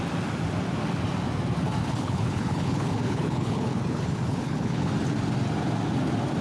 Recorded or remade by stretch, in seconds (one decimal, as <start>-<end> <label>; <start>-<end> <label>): 0.0-1.8 recorded; 1.8-4.9 remade; 4.9-6.4 recorded